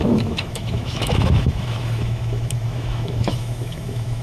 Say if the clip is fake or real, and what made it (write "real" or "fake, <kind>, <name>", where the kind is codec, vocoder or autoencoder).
fake, autoencoder, DAC-VAE